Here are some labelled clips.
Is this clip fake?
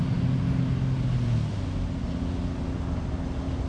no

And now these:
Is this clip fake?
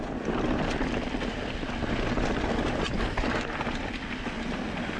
no